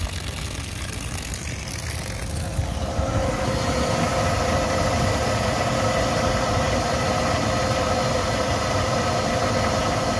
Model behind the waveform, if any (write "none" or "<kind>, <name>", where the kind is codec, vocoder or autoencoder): none